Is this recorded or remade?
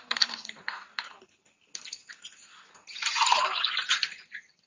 recorded